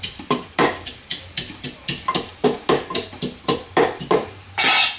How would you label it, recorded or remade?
recorded